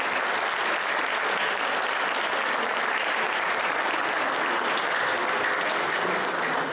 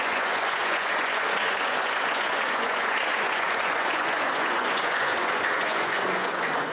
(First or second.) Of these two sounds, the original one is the first